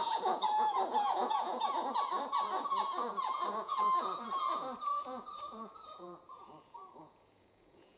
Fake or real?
fake